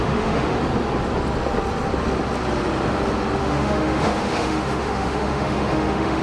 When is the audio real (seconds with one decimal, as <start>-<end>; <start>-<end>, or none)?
0.6-3.4